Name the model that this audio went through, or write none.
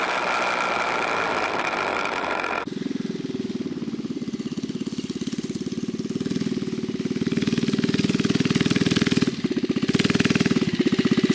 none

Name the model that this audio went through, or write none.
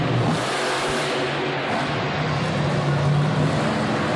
none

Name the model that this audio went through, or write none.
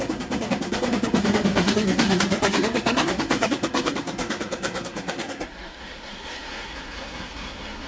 codec, SNAC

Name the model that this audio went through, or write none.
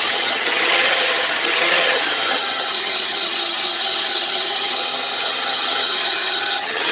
vocoder, HiFi-GAN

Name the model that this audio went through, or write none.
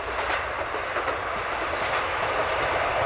none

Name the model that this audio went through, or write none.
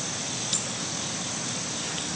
none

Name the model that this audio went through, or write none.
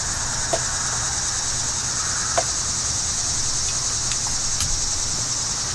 none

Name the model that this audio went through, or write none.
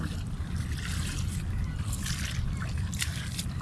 none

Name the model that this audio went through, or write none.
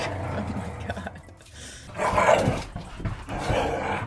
none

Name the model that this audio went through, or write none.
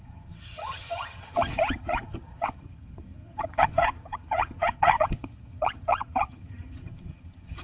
vocoder, HiFi-GAN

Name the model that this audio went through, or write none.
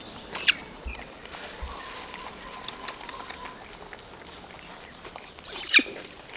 none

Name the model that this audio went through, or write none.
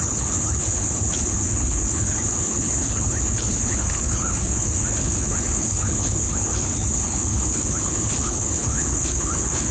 codec, HILCodec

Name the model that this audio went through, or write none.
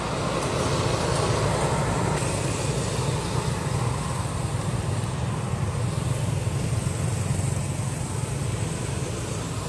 none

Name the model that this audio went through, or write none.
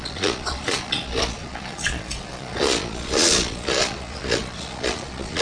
vocoder, Vocos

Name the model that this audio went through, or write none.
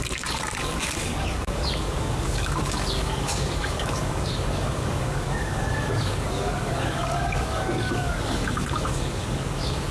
codec, DAC